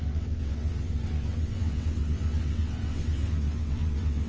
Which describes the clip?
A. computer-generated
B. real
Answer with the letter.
A